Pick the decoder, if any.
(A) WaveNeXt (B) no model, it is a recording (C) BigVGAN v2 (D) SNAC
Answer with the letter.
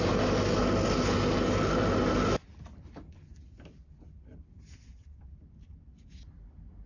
B